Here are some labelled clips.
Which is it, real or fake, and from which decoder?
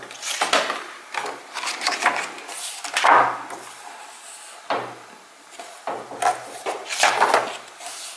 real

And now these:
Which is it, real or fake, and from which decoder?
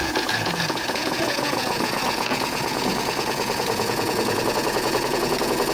fake, vocoder, Vocos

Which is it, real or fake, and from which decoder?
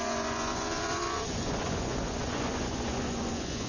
fake, vocoder, Vocos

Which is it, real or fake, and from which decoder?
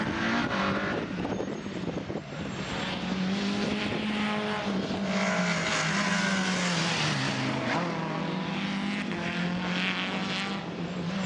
real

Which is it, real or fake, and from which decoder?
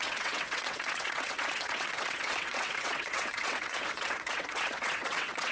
fake, vocoder, WaveNeXt